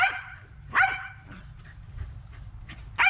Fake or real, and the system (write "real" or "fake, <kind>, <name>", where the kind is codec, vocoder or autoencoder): fake, vocoder, BigVGAN v2